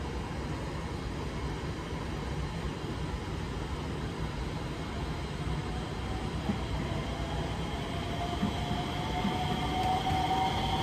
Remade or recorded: recorded